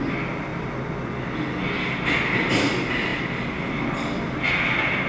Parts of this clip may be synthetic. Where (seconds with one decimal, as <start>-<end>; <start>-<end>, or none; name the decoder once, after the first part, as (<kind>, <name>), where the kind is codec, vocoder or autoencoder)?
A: none